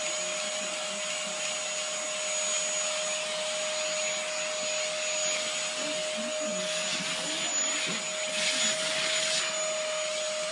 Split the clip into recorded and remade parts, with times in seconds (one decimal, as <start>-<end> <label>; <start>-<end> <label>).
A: 0.0-10.5 recorded